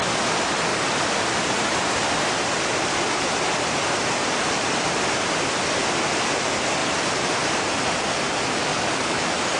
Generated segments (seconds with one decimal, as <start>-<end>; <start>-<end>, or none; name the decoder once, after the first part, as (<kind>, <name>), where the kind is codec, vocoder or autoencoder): 8.7-9.2 (codec, DAC)